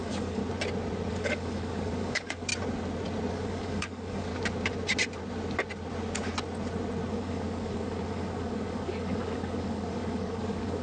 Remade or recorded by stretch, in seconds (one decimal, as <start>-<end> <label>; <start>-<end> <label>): 0.0-0.4 remade; 0.4-1.1 recorded; 1.1-2.5 remade; 2.5-3.3 recorded; 3.3-4.3 remade; 4.3-7.1 recorded; 7.1-10.8 remade